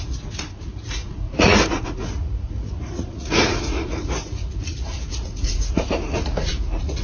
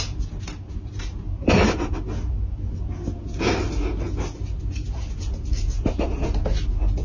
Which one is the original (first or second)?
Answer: second